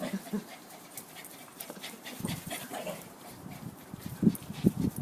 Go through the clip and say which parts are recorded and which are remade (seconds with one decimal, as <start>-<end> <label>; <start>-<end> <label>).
0.0-1.2 recorded; 1.2-4.2 remade; 4.2-5.0 recorded

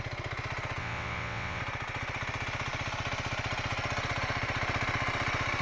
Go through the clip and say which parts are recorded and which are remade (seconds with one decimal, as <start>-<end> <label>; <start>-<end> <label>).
0.0-0.8 recorded; 0.8-1.6 remade; 1.6-5.6 recorded

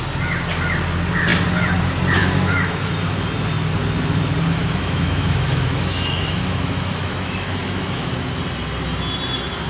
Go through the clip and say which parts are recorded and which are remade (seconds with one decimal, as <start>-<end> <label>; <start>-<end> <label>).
0.0-2.2 recorded; 2.2-2.9 remade; 2.9-4.6 recorded; 4.6-8.1 remade; 8.1-9.7 recorded